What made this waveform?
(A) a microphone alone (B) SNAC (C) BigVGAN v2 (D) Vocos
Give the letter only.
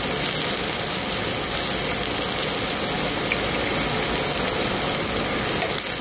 A